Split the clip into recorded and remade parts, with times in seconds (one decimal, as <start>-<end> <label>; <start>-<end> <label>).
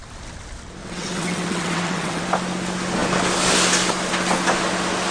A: 0.0-0.8 recorded; 0.8-2.2 remade; 2.2-5.1 recorded